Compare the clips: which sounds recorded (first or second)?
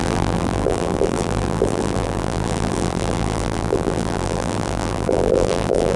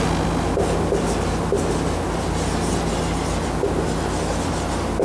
second